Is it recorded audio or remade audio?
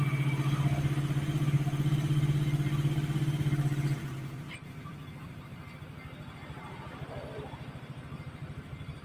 recorded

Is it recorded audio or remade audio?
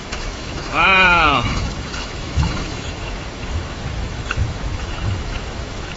remade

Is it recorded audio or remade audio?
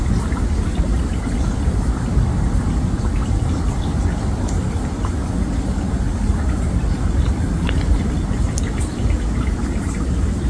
recorded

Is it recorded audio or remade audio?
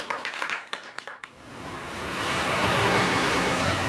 remade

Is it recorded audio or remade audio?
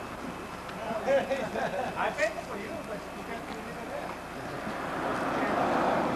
recorded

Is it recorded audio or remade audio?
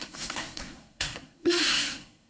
remade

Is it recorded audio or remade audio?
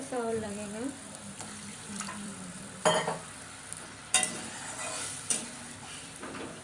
remade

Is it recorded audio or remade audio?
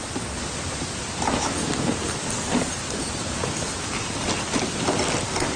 recorded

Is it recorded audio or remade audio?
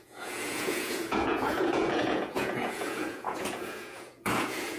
remade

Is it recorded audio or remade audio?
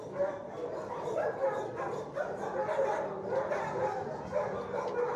recorded